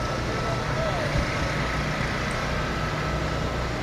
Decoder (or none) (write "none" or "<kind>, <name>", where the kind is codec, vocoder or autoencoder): none